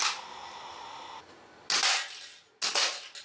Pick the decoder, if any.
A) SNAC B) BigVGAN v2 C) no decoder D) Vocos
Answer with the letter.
C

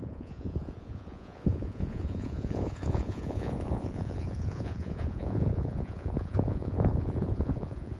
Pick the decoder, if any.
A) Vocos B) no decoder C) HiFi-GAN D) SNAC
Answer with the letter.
A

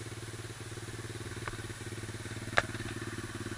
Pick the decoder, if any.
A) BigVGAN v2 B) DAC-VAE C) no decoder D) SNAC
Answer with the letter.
C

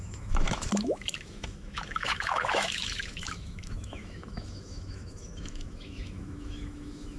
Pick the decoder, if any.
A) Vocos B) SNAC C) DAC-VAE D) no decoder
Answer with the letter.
C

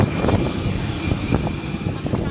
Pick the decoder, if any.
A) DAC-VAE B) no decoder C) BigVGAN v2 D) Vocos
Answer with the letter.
B